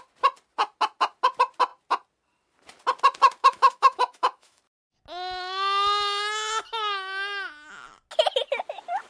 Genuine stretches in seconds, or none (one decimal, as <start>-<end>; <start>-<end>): 0.0-3.4; 4.6-9.1